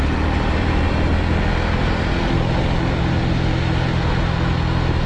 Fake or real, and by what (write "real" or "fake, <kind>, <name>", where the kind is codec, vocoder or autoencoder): real